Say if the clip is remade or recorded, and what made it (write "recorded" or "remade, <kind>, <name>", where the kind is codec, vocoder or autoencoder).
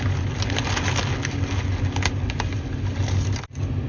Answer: recorded